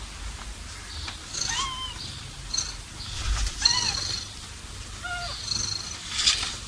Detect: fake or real real